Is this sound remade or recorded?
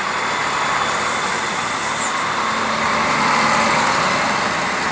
recorded